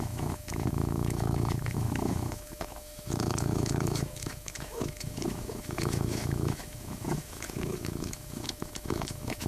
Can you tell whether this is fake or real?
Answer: fake